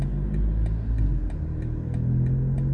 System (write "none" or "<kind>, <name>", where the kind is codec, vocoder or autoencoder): none